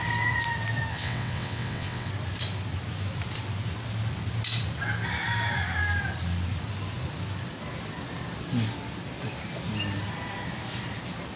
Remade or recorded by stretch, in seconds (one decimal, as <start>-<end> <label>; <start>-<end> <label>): 0.0-0.9 recorded; 0.9-2.1 remade; 2.1-11.4 recorded